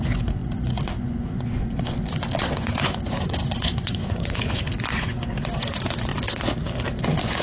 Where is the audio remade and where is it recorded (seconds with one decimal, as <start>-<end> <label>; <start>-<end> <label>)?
0.0-6.1 remade; 6.1-7.0 recorded; 7.0-7.4 remade